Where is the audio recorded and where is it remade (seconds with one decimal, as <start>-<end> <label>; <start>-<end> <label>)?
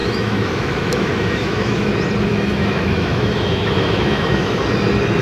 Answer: 0.0-1.9 remade; 1.9-2.3 recorded; 2.3-4.6 remade; 4.6-5.2 recorded